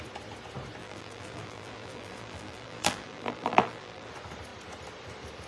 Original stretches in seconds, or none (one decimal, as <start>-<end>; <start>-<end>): 0.0-0.8; 4.1-5.5